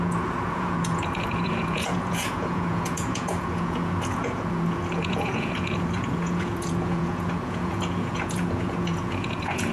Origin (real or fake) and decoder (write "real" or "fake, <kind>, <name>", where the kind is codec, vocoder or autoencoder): fake, vocoder, Vocos